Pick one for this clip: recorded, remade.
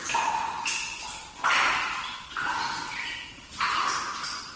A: recorded